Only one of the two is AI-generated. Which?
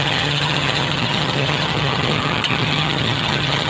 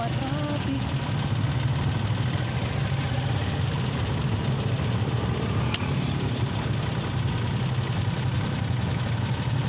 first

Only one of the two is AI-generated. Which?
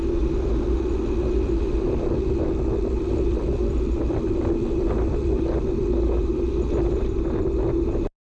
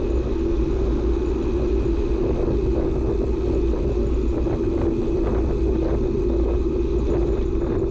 first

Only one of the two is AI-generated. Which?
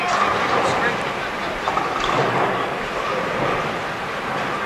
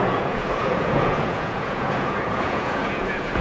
second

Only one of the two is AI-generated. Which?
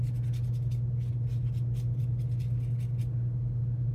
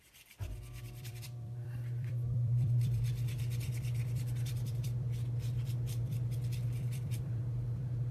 second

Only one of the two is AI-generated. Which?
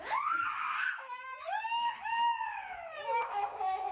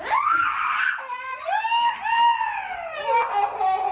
first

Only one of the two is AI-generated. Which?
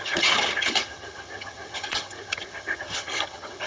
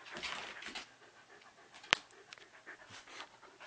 first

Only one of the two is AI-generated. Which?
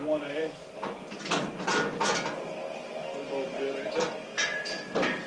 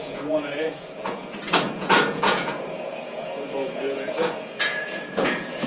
second